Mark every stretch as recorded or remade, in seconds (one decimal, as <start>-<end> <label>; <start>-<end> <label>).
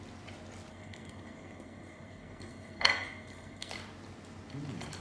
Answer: 0.0-0.7 recorded; 0.7-3.7 remade; 3.7-5.0 recorded